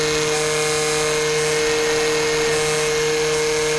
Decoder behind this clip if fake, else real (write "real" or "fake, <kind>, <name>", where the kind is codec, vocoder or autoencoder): real